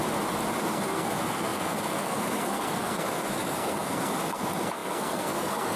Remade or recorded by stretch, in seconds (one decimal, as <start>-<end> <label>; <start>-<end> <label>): 0.0-0.6 recorded; 0.6-5.8 remade